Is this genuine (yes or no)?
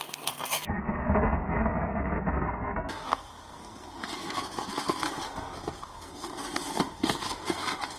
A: no